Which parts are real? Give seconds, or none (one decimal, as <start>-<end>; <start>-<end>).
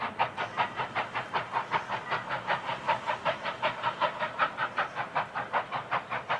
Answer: 0.0-2.7; 3.5-6.4